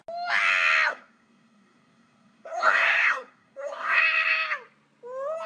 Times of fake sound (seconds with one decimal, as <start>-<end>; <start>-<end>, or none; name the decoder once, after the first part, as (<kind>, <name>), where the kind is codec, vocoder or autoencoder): 0.9-4.0 (codec, SNAC)